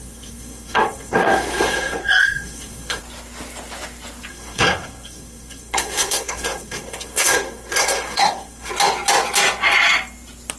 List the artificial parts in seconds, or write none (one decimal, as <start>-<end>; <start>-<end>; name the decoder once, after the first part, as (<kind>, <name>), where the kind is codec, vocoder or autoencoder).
0.0-3.0 (codec, SNAC); 4.3-8.7